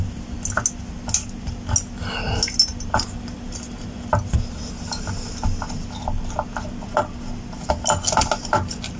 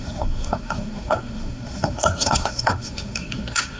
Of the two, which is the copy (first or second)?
second